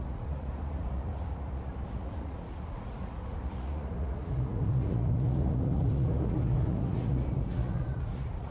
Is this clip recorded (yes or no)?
no